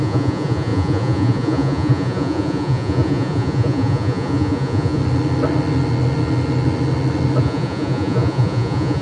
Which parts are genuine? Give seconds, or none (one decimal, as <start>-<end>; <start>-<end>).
5.0-7.4